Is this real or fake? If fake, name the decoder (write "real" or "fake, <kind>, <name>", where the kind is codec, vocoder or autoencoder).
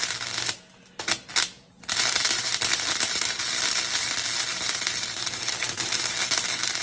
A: real